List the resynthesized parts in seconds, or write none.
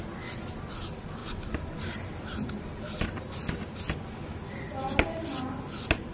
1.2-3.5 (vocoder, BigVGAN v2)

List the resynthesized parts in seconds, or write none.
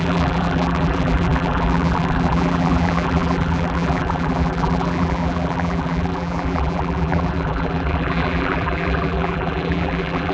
0.0-10.3 (vocoder, BigVGAN v2)